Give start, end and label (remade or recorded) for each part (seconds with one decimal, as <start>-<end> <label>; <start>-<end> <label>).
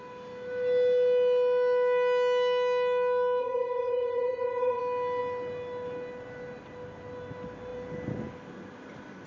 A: 0.0-3.4 recorded; 3.4-4.8 remade; 4.8-9.3 recorded